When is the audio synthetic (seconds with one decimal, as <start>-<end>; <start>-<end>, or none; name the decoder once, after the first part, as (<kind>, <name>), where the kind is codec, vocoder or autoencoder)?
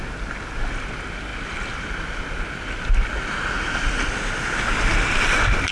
none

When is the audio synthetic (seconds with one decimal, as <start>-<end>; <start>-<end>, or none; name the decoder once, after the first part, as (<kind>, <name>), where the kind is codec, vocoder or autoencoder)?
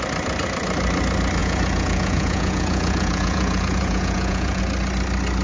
1.4-4.6 (vocoder, Vocos)